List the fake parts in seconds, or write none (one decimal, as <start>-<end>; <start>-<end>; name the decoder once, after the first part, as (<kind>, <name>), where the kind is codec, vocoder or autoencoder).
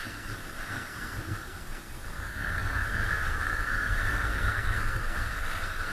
0.0-5.9 (codec, SNAC)